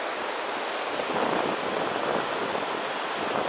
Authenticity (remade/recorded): recorded